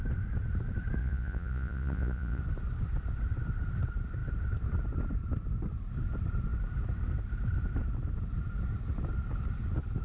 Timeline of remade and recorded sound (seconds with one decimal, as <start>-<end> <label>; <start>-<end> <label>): 0.0-1.0 recorded; 1.0-2.4 remade; 2.4-10.0 recorded